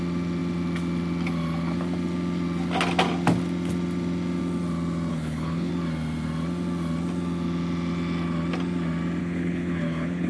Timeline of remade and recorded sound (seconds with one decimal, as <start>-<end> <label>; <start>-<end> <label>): 0.0-5.1 recorded; 5.1-5.7 remade; 5.7-9.2 recorded; 9.2-10.3 remade